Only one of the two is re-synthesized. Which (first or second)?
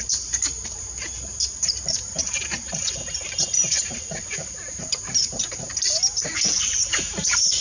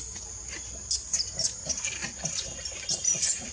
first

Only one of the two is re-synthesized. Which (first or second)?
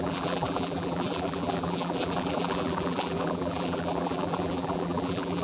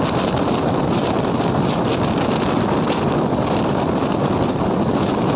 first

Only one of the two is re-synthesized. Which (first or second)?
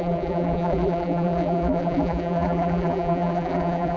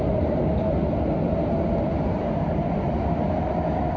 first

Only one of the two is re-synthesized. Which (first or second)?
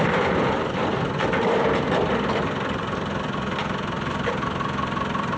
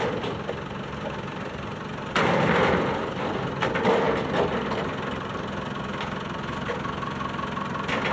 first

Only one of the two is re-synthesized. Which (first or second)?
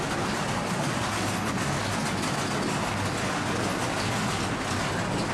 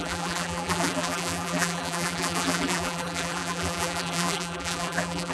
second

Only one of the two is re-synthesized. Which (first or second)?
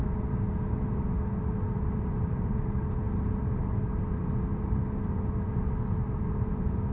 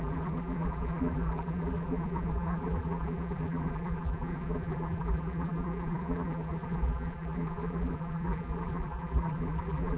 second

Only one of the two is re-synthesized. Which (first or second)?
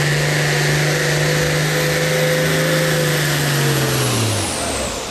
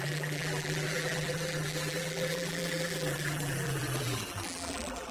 second